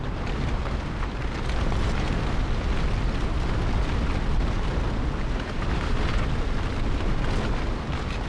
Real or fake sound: real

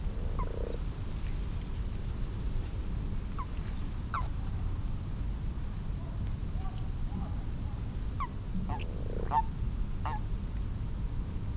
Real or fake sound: real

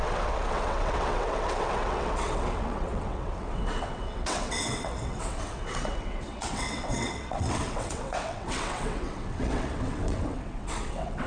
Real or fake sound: fake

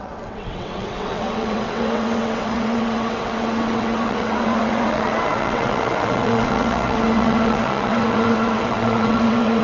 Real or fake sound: fake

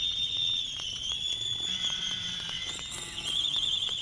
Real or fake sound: fake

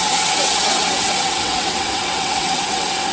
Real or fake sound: fake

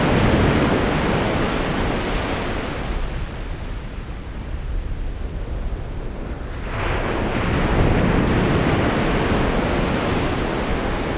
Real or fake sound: real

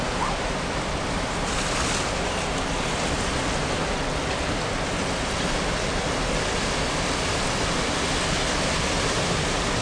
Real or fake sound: real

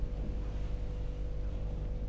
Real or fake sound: real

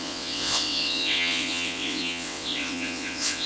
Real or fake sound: fake